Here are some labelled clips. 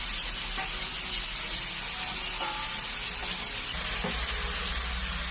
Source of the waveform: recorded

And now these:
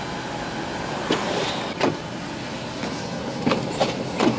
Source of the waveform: recorded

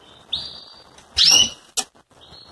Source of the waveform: recorded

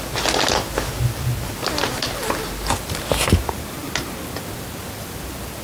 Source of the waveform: recorded